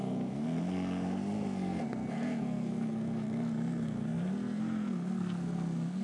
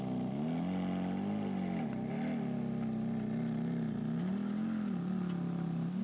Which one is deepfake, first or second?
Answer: first